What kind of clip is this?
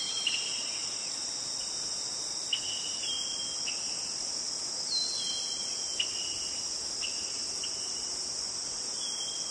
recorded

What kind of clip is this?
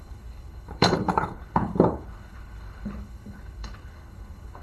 remade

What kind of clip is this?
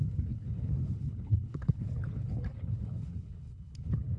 remade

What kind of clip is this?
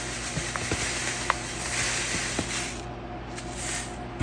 recorded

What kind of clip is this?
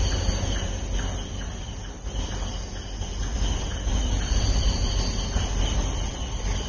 recorded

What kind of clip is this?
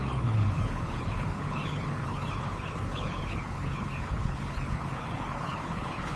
remade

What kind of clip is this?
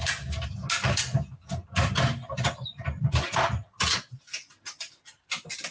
recorded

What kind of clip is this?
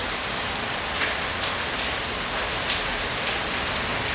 recorded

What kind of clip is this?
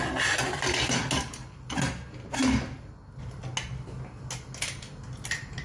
recorded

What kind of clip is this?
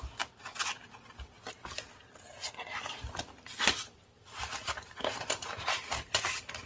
recorded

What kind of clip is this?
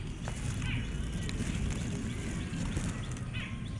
recorded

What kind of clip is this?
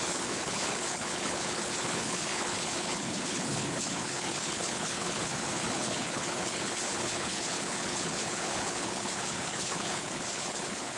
remade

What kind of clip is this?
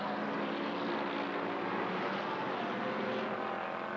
recorded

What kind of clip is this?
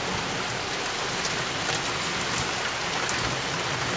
recorded